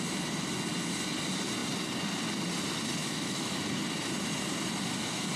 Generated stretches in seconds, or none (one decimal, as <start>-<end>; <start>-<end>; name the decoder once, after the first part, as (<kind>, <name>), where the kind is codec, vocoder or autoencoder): 3.0-3.6 (autoencoder, DAC-VAE)